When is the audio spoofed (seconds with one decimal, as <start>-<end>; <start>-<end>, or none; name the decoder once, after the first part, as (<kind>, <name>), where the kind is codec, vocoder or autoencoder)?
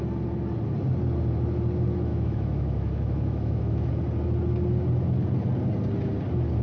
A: 2.1-3.9 (autoencoder, DAC-VAE)